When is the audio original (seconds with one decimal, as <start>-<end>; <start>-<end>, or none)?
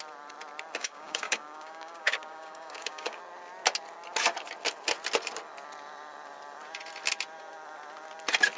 0.0-0.8; 3.2-8.6